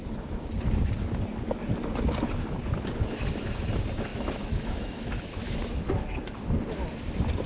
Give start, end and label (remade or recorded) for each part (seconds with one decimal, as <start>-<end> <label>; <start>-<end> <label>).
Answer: 0.0-4.1 recorded; 4.1-5.5 remade; 5.5-7.5 recorded